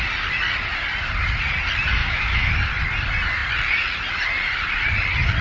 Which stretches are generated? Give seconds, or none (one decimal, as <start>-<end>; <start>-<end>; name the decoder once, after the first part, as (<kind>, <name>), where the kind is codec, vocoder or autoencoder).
2.0-2.5 (autoencoder, DAC-VAE)

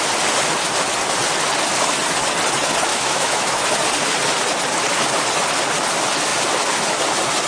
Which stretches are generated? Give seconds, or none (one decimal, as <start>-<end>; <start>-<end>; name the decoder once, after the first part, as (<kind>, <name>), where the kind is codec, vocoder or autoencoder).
2.9-3.7 (autoencoder, DAC-VAE)

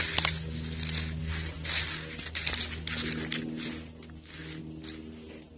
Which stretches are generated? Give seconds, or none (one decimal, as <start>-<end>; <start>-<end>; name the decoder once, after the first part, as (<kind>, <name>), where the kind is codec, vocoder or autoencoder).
none

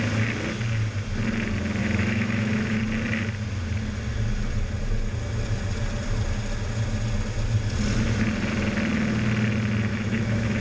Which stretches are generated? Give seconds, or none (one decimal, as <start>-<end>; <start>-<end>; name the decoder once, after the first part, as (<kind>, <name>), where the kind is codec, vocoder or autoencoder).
1.8-2.8 (autoencoder, DAC-VAE); 9.9-10.6